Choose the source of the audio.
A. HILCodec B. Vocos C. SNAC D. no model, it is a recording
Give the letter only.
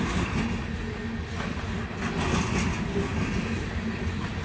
D